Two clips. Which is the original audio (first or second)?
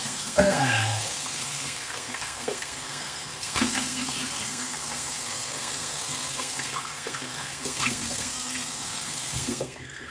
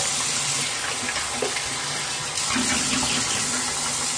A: second